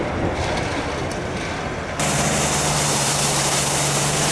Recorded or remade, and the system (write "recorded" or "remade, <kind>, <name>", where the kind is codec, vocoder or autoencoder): recorded